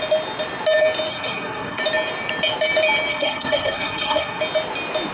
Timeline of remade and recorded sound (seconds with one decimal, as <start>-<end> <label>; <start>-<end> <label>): 0.0-1.1 recorded; 1.1-1.8 remade; 1.8-3.1 recorded; 3.1-4.4 remade; 4.4-5.1 recorded